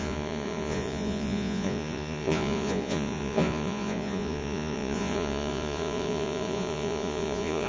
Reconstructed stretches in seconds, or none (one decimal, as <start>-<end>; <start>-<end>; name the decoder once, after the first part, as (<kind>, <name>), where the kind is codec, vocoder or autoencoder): 0.0-7.7 (vocoder, Vocos)